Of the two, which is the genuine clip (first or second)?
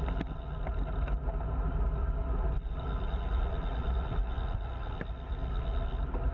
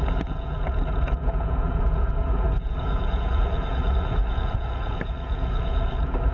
first